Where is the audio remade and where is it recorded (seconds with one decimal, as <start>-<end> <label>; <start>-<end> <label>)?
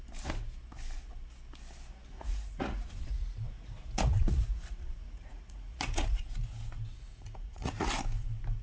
0.0-2.1 recorded; 2.1-6.2 remade; 6.2-6.9 recorded; 6.9-7.9 remade; 7.9-8.6 recorded